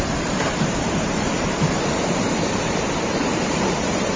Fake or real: fake